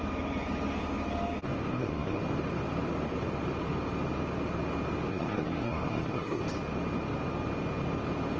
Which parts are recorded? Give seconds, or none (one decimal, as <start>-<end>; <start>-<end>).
0.0-1.7; 2.2-5.1; 6.4-8.4